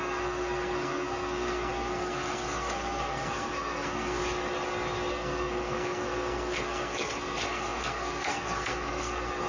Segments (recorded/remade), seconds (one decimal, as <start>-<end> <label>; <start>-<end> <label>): 0.0-4.2 remade; 4.2-5.1 recorded; 5.1-9.5 remade